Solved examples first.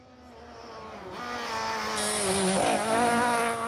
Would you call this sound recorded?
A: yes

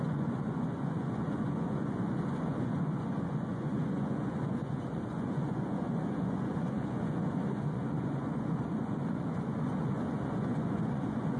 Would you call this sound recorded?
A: no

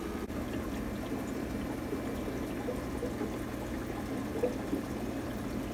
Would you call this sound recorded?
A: yes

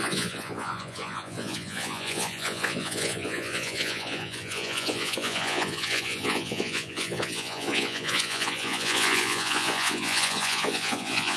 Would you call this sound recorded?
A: no